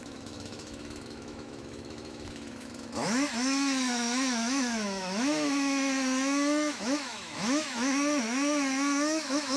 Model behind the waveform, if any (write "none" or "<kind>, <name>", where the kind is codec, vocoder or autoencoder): autoencoder, DAC-VAE